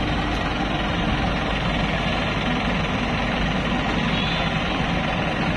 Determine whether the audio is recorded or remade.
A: recorded